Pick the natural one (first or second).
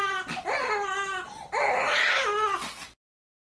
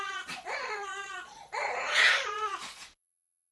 first